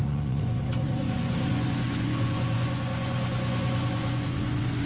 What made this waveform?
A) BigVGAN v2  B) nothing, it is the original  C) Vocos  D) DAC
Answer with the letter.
C